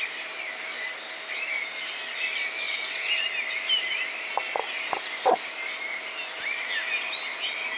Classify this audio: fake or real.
real